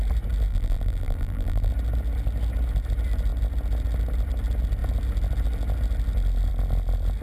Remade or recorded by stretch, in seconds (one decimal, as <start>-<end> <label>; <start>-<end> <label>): 0.0-0.5 recorded; 0.5-1.7 remade; 1.7-7.2 recorded